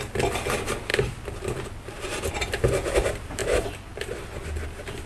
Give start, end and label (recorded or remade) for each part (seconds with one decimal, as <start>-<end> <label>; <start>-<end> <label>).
0.0-5.1 recorded